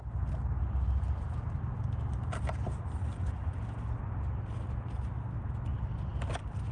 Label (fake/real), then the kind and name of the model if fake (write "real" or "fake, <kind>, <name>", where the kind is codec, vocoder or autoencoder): real